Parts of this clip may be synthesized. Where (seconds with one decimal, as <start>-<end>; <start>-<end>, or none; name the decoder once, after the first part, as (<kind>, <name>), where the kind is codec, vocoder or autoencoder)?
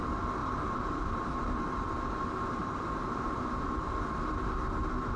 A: 0.4-1.9 (vocoder, BigVGAN v2); 2.6-3.3